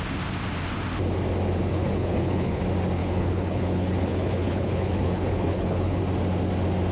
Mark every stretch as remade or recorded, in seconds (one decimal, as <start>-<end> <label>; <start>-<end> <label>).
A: 0.0-1.7 recorded; 1.7-2.6 remade; 2.6-3.0 recorded; 3.0-6.0 remade; 6.0-6.9 recorded